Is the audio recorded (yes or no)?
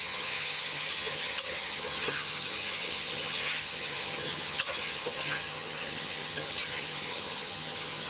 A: no